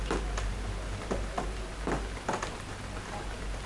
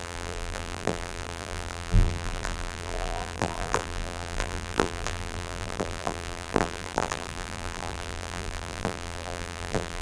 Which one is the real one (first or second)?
first